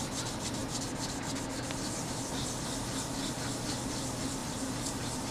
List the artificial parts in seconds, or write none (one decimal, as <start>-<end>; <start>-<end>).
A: 4.4-5.3